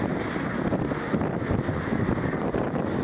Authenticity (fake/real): real